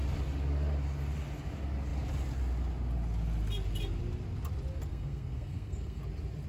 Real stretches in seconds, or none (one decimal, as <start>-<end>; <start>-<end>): 0.0-4.9; 6.0-6.5